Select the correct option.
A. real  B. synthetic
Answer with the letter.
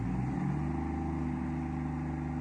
A